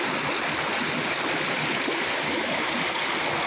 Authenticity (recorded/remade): recorded